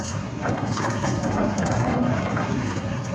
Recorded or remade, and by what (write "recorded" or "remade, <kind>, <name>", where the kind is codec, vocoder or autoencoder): remade, codec, SNAC